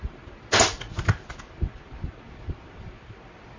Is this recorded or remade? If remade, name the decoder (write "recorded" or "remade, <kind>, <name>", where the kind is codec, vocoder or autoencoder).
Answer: recorded